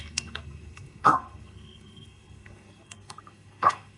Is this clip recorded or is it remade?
remade